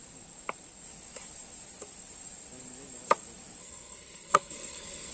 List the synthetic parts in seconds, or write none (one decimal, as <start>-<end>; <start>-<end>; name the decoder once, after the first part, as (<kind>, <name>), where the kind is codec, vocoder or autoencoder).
3.6-5.1 (codec, SNAC)